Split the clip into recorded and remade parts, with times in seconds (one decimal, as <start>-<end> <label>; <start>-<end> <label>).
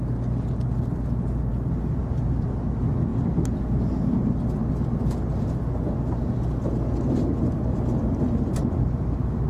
0.0-9.5 recorded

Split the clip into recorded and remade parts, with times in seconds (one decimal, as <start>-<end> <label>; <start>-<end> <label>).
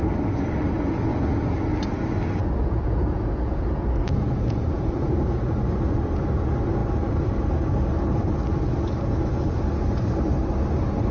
0.0-2.4 recorded; 2.4-5.4 remade; 5.4-11.1 recorded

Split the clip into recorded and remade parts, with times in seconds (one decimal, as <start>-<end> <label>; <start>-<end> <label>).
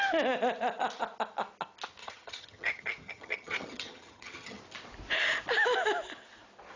0.0-2.0 recorded; 2.0-4.6 remade; 4.6-6.8 recorded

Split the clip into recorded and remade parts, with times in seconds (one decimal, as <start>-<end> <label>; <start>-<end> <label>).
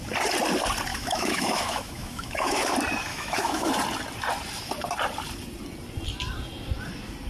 0.0-0.9 recorded; 0.9-2.6 remade; 2.6-3.1 recorded; 3.1-3.7 remade; 3.7-7.3 recorded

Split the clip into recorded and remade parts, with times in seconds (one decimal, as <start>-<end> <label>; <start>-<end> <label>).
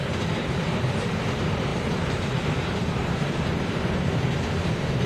0.0-5.1 remade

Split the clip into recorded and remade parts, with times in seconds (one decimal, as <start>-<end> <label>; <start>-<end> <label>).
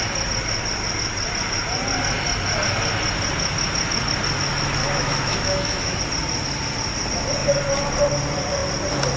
0.0-4.8 recorded; 4.8-6.0 remade; 6.0-9.2 recorded